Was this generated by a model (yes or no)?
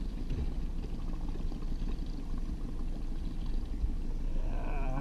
no